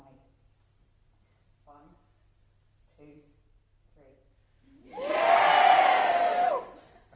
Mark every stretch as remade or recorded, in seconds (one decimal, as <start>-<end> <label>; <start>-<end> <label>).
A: 0.0-7.2 recorded